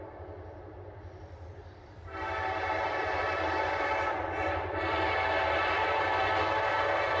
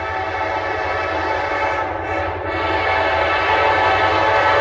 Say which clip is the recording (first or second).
second